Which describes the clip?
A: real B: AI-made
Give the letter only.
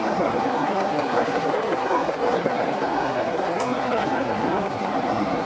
B